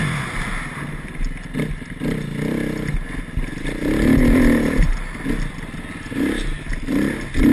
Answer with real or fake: real